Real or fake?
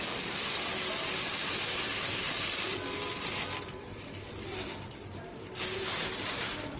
real